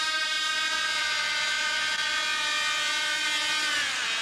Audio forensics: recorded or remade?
recorded